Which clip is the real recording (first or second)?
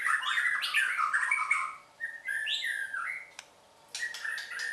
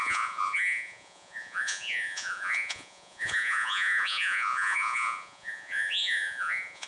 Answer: first